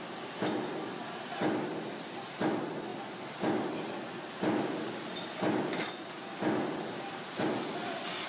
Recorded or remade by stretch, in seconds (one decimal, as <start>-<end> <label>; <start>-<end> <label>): 0.0-8.3 recorded